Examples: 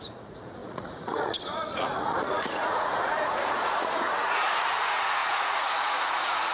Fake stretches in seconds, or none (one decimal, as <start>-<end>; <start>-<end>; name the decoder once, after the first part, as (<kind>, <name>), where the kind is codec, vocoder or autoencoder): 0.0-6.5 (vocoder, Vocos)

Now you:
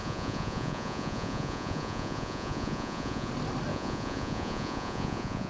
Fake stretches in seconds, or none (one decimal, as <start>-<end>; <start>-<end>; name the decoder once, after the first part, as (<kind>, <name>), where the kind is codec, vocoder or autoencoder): 0.0-3.3 (vocoder, Vocos); 3.7-5.5

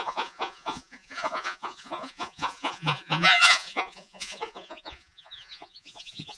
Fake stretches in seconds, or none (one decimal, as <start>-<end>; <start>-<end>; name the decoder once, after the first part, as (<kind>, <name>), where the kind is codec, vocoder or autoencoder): 0.0-6.4 (vocoder, Vocos)

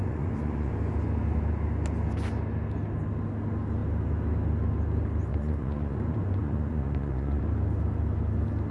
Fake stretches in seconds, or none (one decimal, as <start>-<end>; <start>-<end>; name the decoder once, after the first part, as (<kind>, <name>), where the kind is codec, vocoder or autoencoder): 0.0-0.7 (vocoder, Vocos); 5.3-7.4

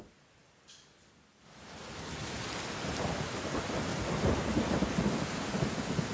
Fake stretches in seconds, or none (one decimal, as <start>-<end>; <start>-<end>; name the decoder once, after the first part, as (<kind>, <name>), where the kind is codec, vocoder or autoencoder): none

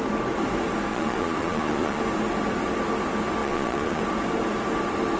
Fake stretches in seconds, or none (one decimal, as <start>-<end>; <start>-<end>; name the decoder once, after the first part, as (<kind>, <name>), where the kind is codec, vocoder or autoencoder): 0.9-2.0 (vocoder, Vocos); 3.4-4.0

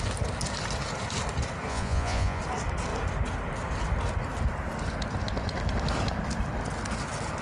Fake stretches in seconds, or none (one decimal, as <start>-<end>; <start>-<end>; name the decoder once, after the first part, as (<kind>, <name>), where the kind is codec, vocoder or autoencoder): 1.7-2.4 (vocoder, Vocos)